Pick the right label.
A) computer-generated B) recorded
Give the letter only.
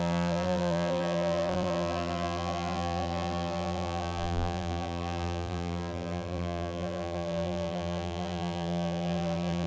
A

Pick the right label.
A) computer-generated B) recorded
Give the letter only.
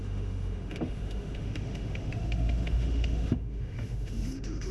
A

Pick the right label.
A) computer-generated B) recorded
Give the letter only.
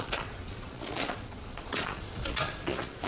A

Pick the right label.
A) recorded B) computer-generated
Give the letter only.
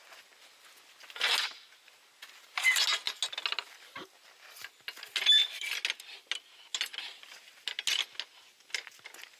A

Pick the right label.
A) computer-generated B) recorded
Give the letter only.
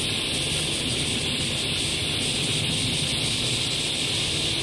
B